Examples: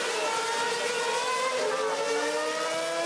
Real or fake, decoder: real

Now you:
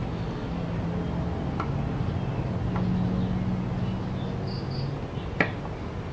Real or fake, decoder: real